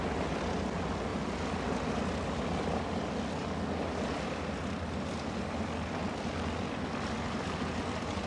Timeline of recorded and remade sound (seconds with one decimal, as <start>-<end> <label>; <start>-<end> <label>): 0.0-8.3 recorded

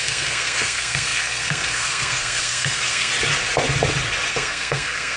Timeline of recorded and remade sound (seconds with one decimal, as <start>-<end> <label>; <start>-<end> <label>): 0.0-3.1 remade; 3.1-4.3 recorded; 4.3-5.2 remade

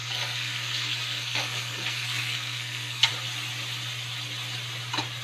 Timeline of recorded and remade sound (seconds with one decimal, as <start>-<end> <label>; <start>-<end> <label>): 0.0-3.1 remade; 3.1-5.2 recorded

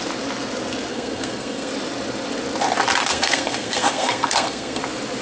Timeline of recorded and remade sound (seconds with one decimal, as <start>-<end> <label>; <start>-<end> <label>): 0.0-0.9 recorded; 0.9-1.7 remade; 1.7-3.0 recorded; 3.0-4.8 remade; 4.8-5.2 recorded

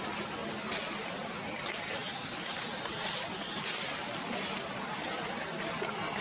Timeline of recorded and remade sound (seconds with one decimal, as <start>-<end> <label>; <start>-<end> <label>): 0.0-6.2 recorded

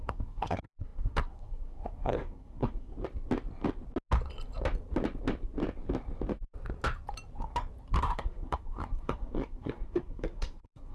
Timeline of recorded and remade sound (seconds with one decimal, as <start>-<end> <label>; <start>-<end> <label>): 0.0-2.9 remade; 2.9-8.0 recorded; 8.0-10.9 remade

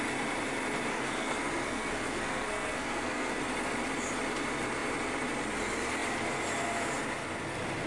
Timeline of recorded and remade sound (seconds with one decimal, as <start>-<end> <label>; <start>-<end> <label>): 0.0-0.9 recorded; 0.9-3.4 remade; 3.4-7.9 recorded

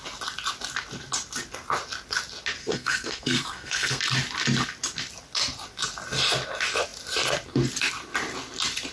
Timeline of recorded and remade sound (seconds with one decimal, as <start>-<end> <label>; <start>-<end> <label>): 0.0-2.6 recorded; 2.6-4.0 remade; 4.0-8.9 recorded